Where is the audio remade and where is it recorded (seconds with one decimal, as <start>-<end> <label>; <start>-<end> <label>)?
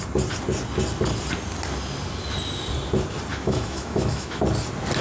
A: 0.0-3.3 recorded; 3.3-4.4 remade; 4.4-5.0 recorded